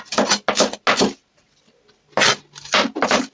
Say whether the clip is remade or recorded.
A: recorded